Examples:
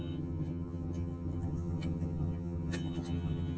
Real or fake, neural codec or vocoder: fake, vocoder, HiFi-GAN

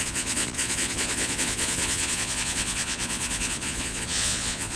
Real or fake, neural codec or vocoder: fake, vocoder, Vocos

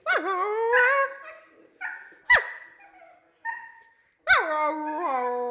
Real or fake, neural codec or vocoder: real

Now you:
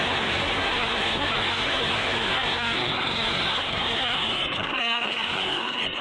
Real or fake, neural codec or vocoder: fake, codec, SNAC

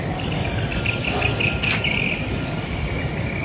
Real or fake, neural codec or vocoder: real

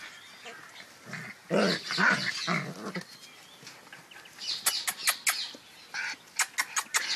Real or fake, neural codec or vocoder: real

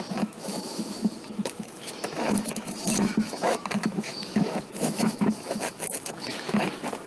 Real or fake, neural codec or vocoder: fake, autoencoder, DAC-VAE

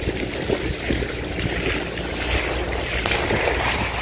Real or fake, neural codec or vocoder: real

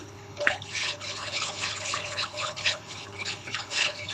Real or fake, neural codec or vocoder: fake, codec, HILCodec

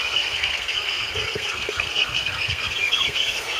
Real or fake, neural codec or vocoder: fake, codec, SNAC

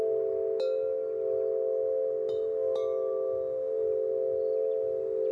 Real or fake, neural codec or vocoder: real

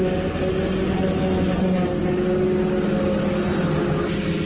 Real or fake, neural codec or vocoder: real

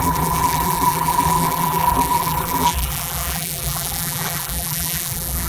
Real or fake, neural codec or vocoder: fake, vocoder, BigVGAN v2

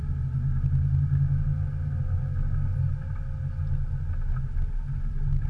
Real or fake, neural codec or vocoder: real